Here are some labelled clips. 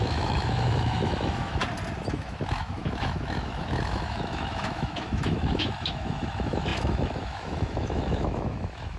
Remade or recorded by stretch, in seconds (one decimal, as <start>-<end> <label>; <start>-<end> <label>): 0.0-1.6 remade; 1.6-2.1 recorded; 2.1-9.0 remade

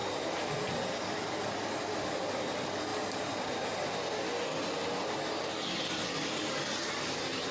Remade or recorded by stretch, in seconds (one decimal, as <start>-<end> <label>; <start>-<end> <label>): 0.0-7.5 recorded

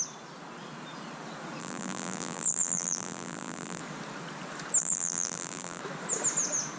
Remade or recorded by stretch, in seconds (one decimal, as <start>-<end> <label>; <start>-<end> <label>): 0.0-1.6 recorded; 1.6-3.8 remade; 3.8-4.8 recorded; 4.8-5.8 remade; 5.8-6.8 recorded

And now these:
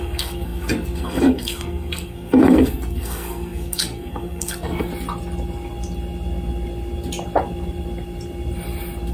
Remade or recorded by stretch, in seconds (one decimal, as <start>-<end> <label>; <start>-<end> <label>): 0.0-4.9 remade; 4.9-9.1 recorded